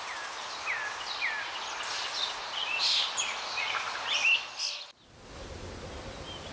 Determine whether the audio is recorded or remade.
recorded